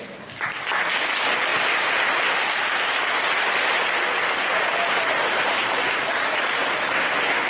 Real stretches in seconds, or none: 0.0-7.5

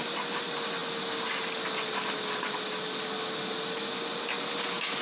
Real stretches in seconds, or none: 0.0-5.0

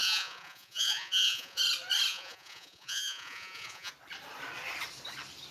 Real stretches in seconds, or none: 1.6-2.1; 3.9-5.5